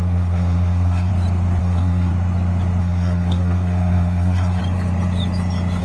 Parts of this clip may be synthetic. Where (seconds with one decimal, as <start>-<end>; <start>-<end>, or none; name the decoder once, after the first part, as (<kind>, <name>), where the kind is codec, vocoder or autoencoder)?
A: 0.0-1.1 (codec, SNAC); 1.6-2.1; 2.8-4.6